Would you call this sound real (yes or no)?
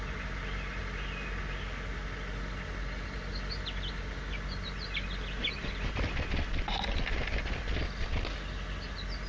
yes